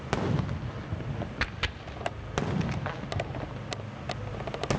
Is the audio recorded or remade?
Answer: recorded